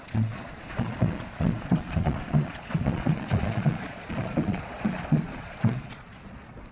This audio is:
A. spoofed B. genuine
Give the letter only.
A